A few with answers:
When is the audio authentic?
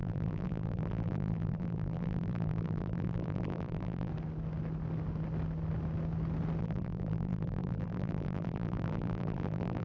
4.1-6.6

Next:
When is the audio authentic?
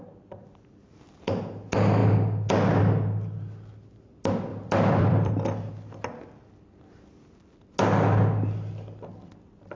0.0-4.5; 5.3-9.8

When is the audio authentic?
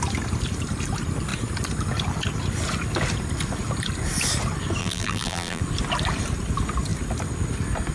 0.0-4.8; 5.6-7.9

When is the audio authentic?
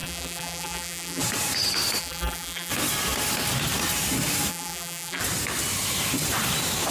1.2-2.0; 2.7-4.5; 5.2-6.9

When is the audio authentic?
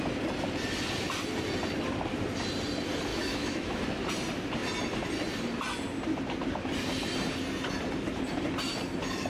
0.0-3.1; 3.8-9.3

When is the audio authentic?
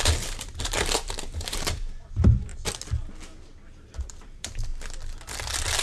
2.5-3.7; 4.7-5.8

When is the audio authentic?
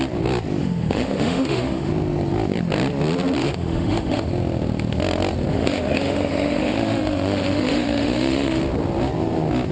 0.0-0.6; 1.9-3.4; 4.3-5.5; 8.6-9.7